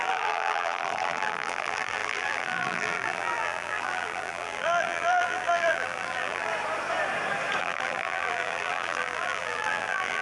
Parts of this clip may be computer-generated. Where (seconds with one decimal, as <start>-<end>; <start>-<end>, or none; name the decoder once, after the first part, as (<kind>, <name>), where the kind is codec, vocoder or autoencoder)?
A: 0.0-6.5 (vocoder, BigVGAN v2); 7.6-10.2